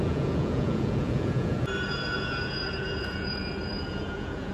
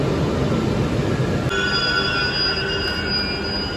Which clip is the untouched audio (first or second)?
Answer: second